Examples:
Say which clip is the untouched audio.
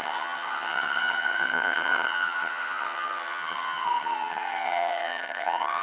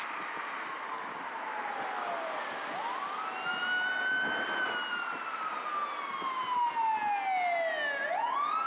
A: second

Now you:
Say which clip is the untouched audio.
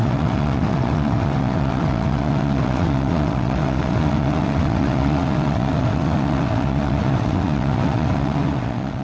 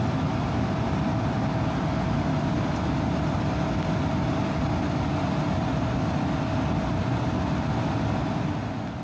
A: second